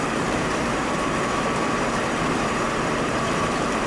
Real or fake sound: fake